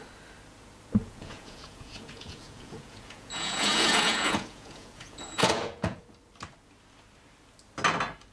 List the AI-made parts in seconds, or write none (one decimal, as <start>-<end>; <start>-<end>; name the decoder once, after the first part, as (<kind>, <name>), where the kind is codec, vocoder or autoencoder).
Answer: 1.0-6.0 (vocoder, Vocos)